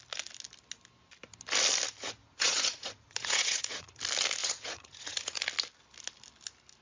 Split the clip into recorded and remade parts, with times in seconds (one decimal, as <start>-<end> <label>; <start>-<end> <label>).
0.0-2.2 recorded; 2.2-4.0 remade; 4.0-4.4 recorded; 4.4-5.4 remade; 5.4-6.8 recorded